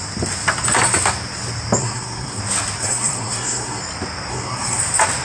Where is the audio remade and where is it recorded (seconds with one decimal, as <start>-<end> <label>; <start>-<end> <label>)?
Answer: 0.0-1.8 recorded; 1.8-2.4 remade; 2.4-2.8 recorded; 2.8-3.8 remade; 3.8-4.3 recorded; 4.3-4.8 remade; 4.8-5.2 recorded